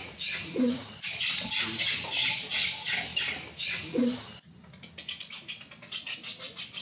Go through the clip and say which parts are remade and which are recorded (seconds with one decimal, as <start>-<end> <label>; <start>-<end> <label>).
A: 0.0-1.2 remade; 1.2-6.8 recorded